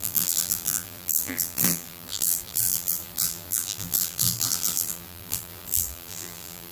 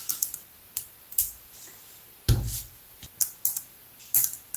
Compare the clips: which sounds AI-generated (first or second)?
first